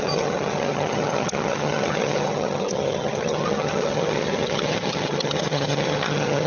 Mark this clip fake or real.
fake